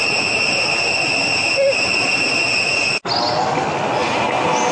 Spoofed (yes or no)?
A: no